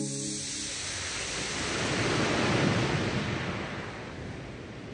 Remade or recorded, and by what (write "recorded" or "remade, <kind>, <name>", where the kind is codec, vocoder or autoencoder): recorded